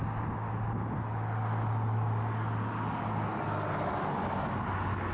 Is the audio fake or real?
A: real